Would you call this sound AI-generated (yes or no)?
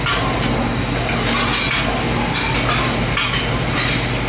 no